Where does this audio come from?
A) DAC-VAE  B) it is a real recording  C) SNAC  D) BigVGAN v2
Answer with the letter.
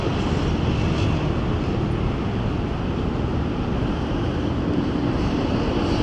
D